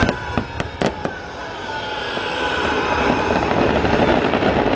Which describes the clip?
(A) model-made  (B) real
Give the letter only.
B